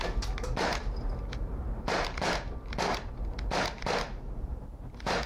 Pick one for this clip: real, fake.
fake